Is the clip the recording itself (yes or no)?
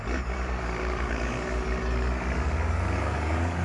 no